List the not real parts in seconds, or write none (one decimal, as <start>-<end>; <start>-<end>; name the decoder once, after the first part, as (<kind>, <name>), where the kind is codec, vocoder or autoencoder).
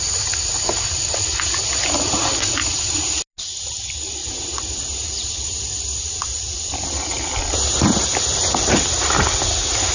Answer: none